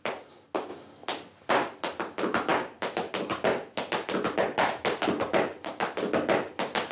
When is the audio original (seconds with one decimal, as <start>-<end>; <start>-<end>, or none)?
0.0-6.9